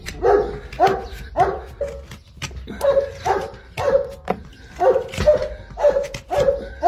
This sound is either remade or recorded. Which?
recorded